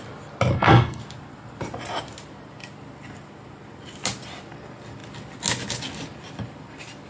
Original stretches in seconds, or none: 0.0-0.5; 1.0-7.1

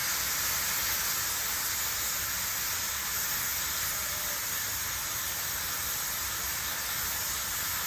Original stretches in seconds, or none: 0.0-7.9

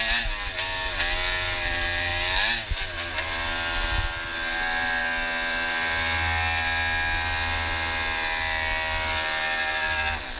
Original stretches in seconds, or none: 0.0-10.4

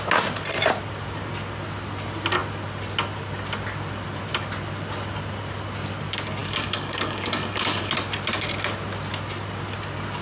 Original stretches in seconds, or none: 0.0-6.4; 7.9-10.2

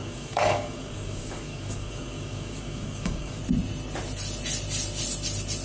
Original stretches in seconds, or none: 3.4-5.6